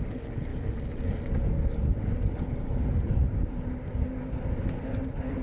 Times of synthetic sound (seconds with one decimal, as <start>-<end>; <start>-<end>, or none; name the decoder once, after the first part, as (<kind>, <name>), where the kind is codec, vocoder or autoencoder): none